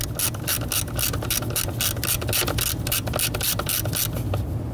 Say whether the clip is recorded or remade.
recorded